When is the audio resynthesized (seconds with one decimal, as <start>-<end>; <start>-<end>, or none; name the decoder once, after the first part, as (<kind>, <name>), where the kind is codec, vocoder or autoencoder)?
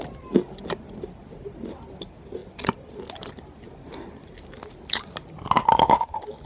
none